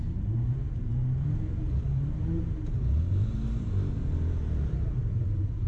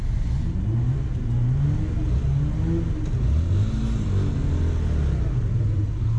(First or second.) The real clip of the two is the second